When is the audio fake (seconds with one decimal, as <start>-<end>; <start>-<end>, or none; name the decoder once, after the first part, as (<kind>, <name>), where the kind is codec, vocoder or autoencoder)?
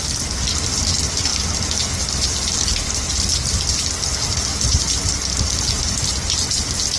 none